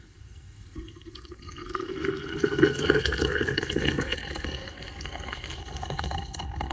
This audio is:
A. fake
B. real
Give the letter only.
A